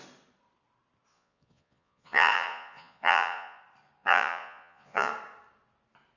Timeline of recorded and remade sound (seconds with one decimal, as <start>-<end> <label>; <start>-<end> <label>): 0.0-1.1 recorded; 1.1-3.6 remade; 3.6-4.0 recorded; 4.0-5.1 remade; 5.1-6.2 recorded